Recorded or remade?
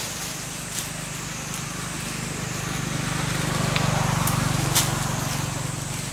recorded